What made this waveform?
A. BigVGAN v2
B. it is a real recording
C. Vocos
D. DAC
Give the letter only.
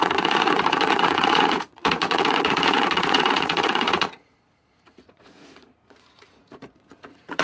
C